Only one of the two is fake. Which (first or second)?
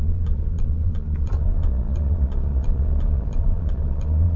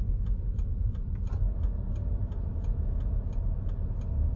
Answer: first